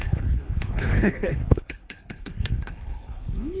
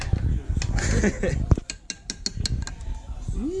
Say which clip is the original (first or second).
second